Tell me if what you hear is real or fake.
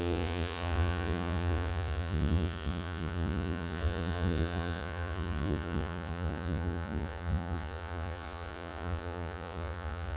fake